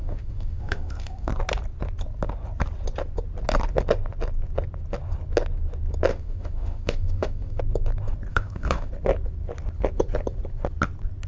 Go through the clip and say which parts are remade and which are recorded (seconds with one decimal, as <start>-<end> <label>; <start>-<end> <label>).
0.0-1.3 remade; 1.3-6.1 recorded; 6.1-7.6 remade; 7.6-8.3 recorded; 8.3-8.9 remade; 8.9-11.3 recorded